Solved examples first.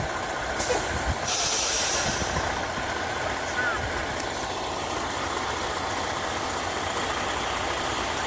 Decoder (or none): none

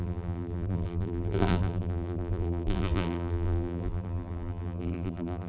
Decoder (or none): vocoder, BigVGAN v2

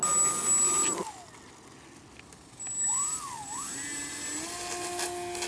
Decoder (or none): none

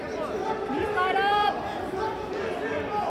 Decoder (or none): vocoder, BigVGAN v2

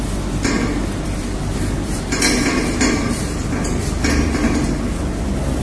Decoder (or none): vocoder, BigVGAN v2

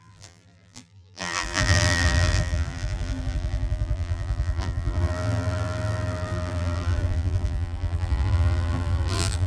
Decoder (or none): vocoder, BigVGAN v2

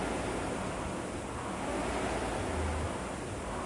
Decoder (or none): none